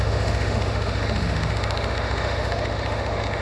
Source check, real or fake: fake